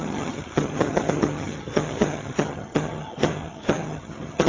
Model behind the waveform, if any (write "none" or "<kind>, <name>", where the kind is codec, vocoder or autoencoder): vocoder, HiFi-GAN